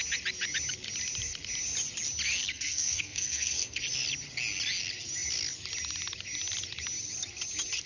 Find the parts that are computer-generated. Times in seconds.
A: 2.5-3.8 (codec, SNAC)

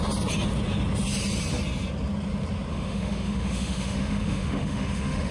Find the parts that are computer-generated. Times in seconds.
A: 2.7-5.3 (autoencoder, DAC-VAE)

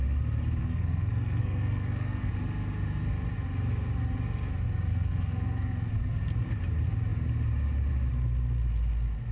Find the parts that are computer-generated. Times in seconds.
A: 0.6-2.3 (codec, SNAC); 4.9-5.9

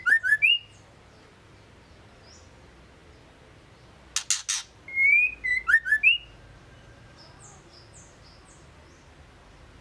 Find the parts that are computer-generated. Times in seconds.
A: none

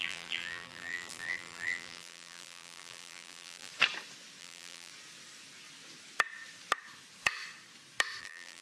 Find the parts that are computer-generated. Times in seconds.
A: 0.0-3.7 (vocoder, BigVGAN v2); 4.4-4.9; 8.2-8.6

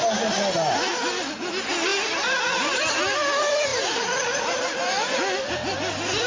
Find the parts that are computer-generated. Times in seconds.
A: 3.7-4.8 (vocoder, BigVGAN v2)

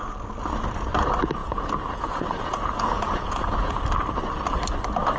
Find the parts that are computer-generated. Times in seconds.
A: 1.4-3.7 (vocoder, Vocos)

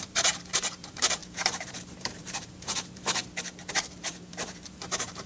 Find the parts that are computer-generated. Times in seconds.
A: 0.0-3.2 (vocoder, BigVGAN v2); 3.7-5.3